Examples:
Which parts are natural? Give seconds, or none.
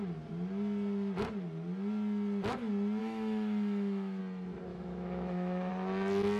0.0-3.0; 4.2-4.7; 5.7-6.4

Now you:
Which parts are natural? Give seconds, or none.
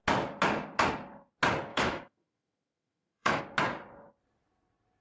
0.0-1.7; 3.4-5.0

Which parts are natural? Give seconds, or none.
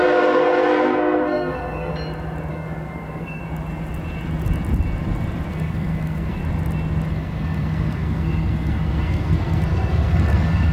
1.9-2.5; 3.4-5.5; 6.4-7.1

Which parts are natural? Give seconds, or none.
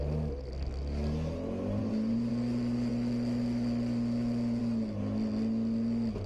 0.0-1.8; 2.3-6.3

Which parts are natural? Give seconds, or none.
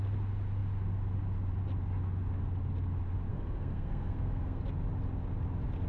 0.0-3.3; 4.6-5.9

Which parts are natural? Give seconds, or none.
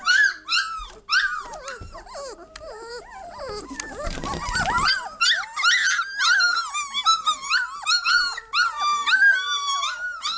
0.0-10.4